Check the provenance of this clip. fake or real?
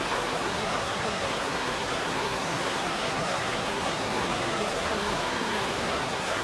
fake